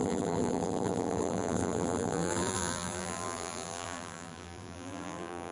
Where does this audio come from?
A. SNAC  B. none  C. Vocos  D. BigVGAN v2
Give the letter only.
D